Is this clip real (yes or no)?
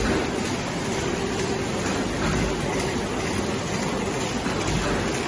yes